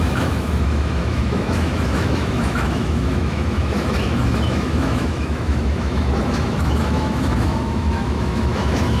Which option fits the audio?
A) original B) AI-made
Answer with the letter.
B